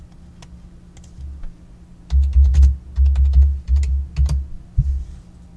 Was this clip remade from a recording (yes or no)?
no